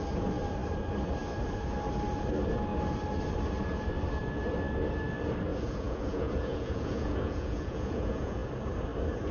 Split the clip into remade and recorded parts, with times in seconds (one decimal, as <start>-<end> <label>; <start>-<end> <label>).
0.0-5.5 recorded; 5.5-8.5 remade; 8.5-9.3 recorded